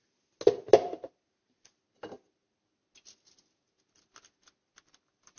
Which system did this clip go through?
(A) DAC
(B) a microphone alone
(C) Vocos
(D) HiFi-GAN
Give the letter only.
B